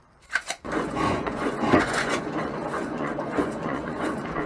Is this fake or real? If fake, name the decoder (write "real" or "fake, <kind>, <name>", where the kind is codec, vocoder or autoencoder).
fake, vocoder, Vocos